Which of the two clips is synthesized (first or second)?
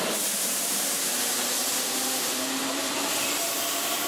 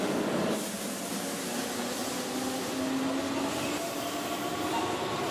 first